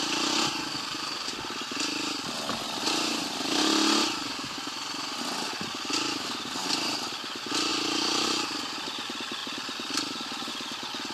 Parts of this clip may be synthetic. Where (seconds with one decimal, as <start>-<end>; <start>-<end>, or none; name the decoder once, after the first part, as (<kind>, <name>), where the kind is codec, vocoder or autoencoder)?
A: none